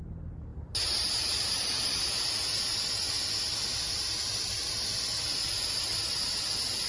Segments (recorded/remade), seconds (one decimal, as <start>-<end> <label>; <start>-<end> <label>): 0.0-0.5 recorded; 0.5-1.9 remade; 1.9-6.9 recorded